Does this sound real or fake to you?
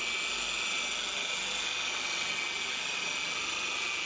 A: real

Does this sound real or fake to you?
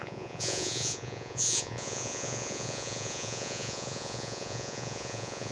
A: fake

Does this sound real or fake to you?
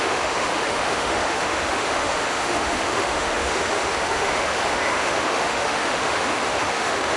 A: fake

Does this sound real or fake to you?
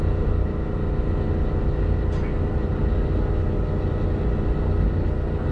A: real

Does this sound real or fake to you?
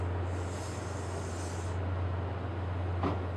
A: real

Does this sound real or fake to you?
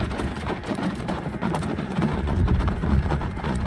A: fake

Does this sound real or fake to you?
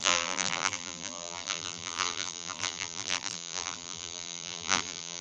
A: fake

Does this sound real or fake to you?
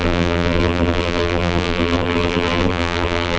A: fake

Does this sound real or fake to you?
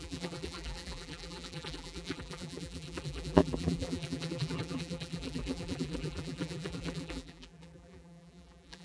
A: fake